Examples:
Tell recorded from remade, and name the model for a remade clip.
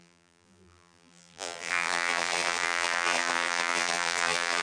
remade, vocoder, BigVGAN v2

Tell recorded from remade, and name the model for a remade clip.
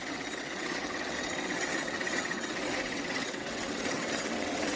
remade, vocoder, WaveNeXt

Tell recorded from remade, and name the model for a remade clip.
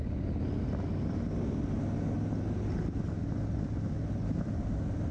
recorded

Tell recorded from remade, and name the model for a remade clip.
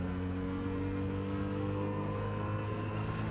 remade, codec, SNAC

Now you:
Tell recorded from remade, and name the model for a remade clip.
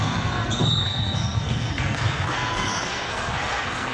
remade, codec, SNAC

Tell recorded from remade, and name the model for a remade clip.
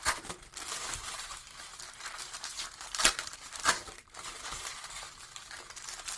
remade, vocoder, BigVGAN v2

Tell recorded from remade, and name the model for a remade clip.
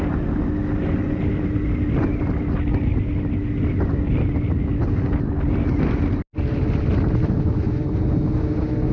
recorded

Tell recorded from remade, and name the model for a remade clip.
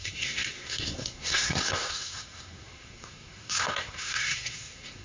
remade, codec, SNAC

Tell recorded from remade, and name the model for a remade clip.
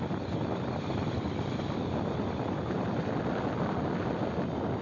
recorded